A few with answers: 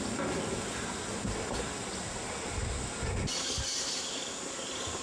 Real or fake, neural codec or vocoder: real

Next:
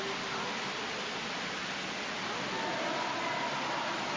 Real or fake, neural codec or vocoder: real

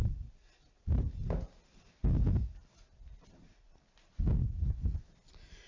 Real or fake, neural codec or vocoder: real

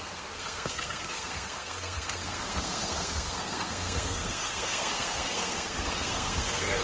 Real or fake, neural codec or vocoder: fake, codec, SNAC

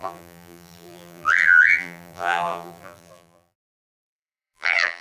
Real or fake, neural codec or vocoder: fake, vocoder, BigVGAN v2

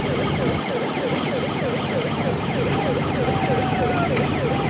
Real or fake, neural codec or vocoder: real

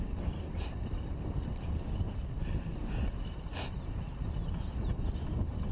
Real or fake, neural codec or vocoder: real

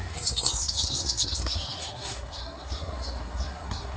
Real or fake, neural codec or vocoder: fake, codec, SNAC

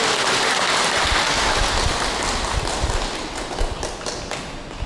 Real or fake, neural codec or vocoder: real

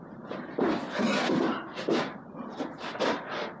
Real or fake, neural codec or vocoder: fake, vocoder, BigVGAN v2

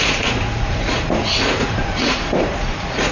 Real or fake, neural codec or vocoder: fake, vocoder, Vocos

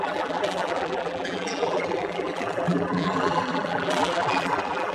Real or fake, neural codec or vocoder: fake, vocoder, BigVGAN v2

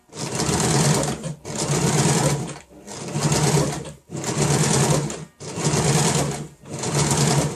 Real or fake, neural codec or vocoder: real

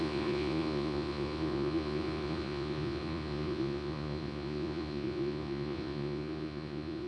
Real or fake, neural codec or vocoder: fake, vocoder, Vocos